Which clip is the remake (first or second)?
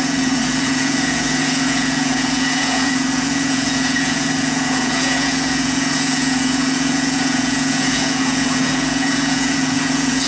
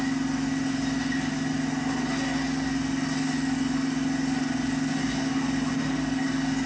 first